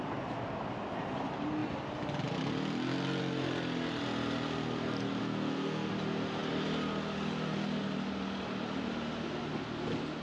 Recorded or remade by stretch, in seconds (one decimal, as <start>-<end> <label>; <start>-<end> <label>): 0.0-5.2 recorded; 5.2-5.9 remade; 5.9-10.2 recorded